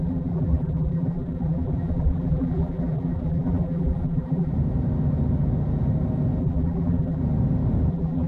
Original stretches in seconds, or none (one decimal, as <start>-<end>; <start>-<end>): 4.5-6.4; 7.2-7.9